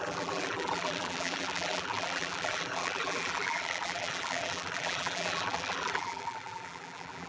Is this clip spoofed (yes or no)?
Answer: yes